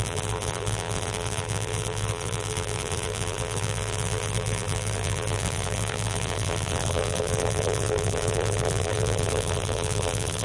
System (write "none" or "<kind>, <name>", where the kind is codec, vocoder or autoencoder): vocoder, BigVGAN v2